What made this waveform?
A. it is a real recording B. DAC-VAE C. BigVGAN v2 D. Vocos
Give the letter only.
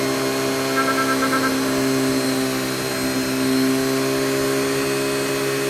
A